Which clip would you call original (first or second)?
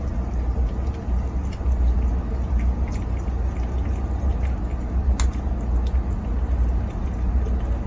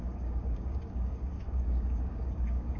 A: first